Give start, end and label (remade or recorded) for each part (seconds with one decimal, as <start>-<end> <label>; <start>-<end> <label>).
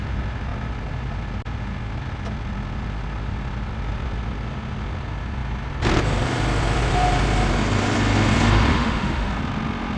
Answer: 0.0-8.7 recorded; 8.7-9.3 remade; 9.3-10.0 recorded